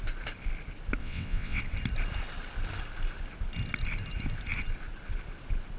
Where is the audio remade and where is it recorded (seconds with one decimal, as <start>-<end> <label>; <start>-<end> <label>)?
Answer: 0.0-1.0 recorded; 1.0-1.6 remade; 1.6-5.8 recorded